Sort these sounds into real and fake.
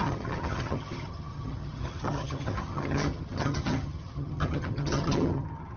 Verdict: fake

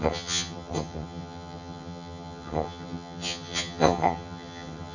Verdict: fake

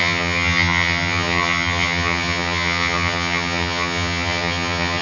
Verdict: fake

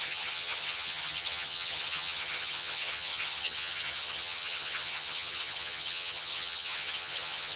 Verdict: fake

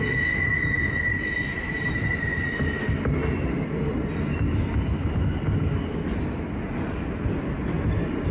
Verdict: real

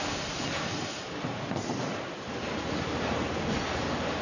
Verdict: real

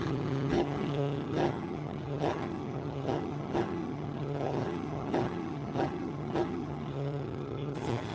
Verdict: fake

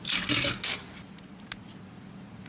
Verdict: real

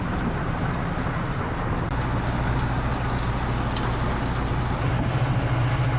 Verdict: real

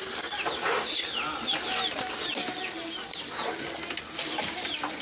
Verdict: real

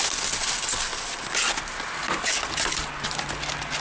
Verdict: real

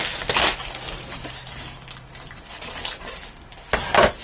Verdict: real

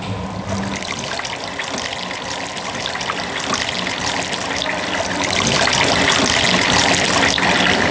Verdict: real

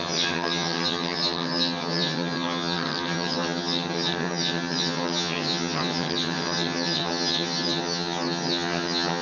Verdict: fake